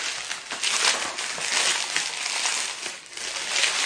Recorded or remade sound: recorded